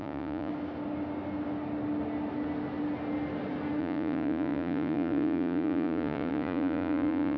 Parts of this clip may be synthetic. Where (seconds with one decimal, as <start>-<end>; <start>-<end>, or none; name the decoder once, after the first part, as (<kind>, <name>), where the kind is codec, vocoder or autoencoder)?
0.0-0.5 (vocoder, Vocos); 3.8-7.4